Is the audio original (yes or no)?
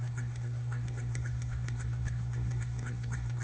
no